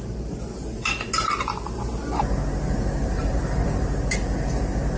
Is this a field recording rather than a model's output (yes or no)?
yes